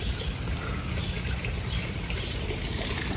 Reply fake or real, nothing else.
fake